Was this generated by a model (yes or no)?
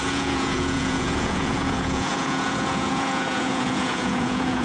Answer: yes